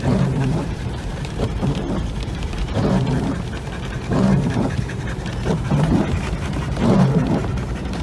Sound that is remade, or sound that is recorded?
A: remade